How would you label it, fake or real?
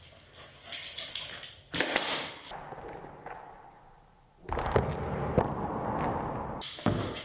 real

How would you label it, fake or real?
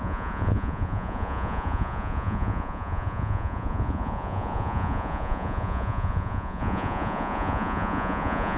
fake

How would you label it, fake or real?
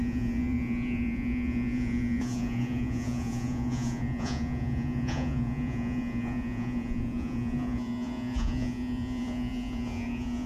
fake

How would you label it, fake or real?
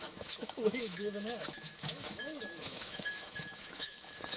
fake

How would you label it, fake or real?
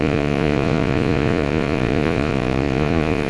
fake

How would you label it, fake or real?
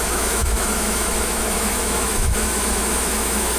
fake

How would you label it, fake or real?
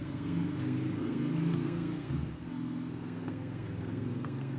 fake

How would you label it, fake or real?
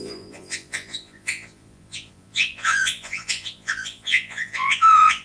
fake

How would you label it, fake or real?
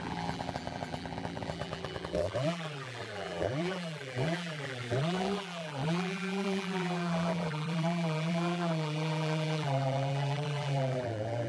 fake